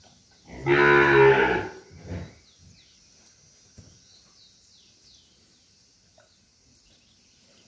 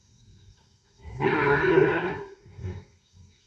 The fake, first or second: second